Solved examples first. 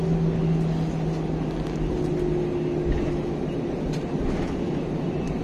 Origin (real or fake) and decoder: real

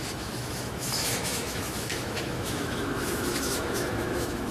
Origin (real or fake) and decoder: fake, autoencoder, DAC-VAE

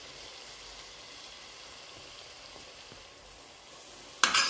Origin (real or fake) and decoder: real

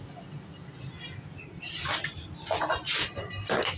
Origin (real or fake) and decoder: real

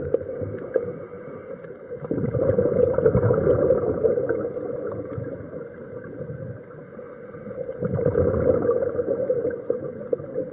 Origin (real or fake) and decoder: real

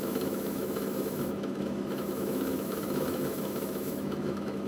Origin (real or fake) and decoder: fake, autoencoder, DAC-VAE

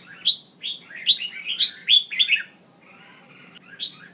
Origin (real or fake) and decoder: real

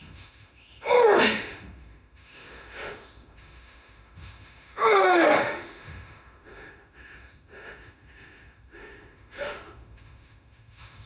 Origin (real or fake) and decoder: fake, autoencoder, DAC-VAE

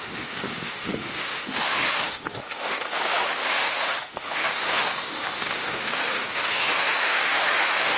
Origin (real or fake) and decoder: fake, autoencoder, DAC-VAE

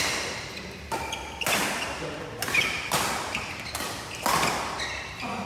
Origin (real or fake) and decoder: real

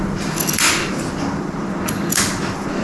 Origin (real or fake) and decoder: real